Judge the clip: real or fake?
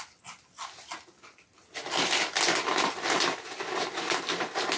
real